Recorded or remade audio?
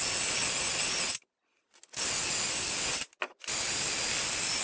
recorded